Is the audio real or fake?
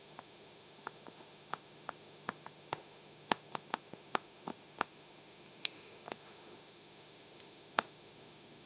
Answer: fake